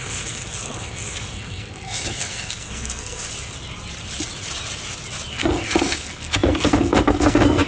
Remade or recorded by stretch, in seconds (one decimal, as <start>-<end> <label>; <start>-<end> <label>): 0.0-3.3 remade; 3.3-5.3 recorded; 5.3-7.7 remade